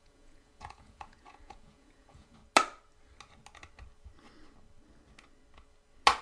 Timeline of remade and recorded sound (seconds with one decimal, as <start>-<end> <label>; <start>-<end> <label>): 0.0-2.4 remade; 2.4-6.2 recorded

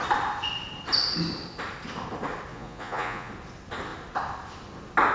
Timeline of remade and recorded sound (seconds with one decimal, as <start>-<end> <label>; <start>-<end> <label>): 0.0-2.5 recorded; 2.5-3.3 remade; 3.3-5.1 recorded

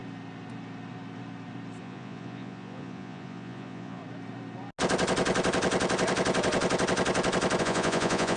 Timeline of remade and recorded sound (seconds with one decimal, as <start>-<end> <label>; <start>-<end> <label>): 0.0-1.8 recorded; 1.8-4.0 remade; 4.0-7.6 recorded; 7.6-8.4 remade

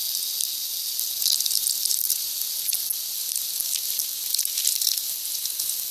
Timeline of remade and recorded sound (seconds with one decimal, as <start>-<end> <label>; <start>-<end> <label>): 0.0-5.9 recorded

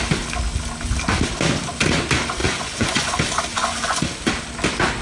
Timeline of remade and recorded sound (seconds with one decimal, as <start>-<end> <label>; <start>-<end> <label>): 0.0-2.4 recorded; 2.4-3.1 remade; 3.1-3.5 recorded; 3.5-4.0 remade; 4.0-5.0 recorded

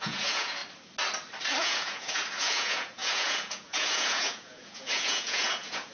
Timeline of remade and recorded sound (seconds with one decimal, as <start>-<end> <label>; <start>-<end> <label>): 0.0-0.6 remade; 0.6-1.6 recorded; 1.6-5.9 remade

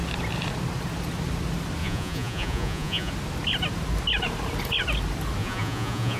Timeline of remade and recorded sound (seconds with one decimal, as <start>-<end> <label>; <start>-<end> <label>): 0.0-1.8 recorded; 1.8-3.1 remade; 3.1-5.4 recorded; 5.4-6.2 remade

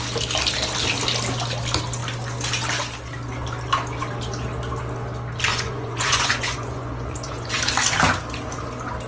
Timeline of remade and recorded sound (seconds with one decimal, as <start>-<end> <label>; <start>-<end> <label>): 0.0-5.5 recorded; 5.5-7.6 remade; 7.6-9.1 recorded